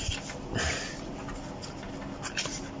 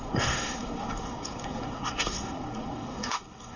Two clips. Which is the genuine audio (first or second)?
first